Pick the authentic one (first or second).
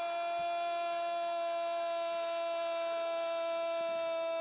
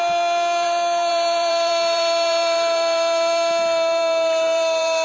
first